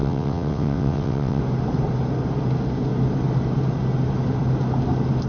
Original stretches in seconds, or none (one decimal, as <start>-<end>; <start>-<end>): 1.4-5.3